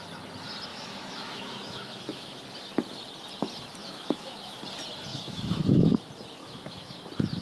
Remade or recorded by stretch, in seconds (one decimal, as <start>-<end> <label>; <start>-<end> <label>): 0.0-0.7 recorded; 0.7-2.4 remade; 2.4-3.8 recorded; 3.8-4.6 remade; 4.6-5.1 recorded; 5.1-6.0 remade; 6.0-6.4 recorded; 6.4-6.9 remade; 6.9-7.4 recorded